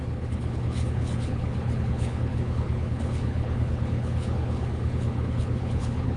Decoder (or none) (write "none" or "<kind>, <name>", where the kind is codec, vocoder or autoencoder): codec, HILCodec